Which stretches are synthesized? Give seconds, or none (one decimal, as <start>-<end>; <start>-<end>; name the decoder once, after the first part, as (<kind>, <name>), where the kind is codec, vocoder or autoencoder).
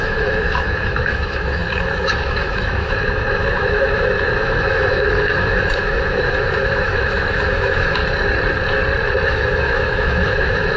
0.0-8.0 (autoencoder, DAC-VAE); 9.3-10.8